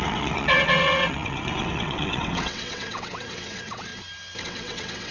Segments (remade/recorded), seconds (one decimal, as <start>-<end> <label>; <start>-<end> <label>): 0.0-3.9 remade; 3.9-4.4 recorded; 4.4-5.1 remade